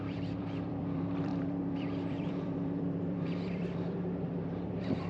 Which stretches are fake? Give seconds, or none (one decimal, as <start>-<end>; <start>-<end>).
0.0-5.1